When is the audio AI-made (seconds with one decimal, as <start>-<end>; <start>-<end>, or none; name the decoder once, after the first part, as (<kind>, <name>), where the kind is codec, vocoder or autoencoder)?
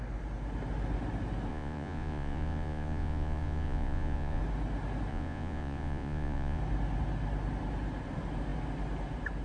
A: 1.5-4.4 (vocoder, Vocos); 5.1-6.6